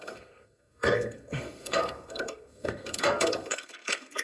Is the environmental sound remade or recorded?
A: remade